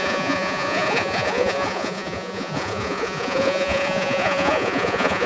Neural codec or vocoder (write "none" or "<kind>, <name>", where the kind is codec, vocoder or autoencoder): vocoder, Vocos